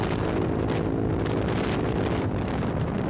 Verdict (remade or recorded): recorded